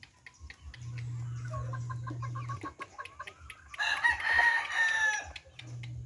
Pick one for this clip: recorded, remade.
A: recorded